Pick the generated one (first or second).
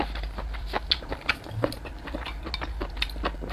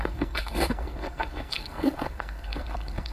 second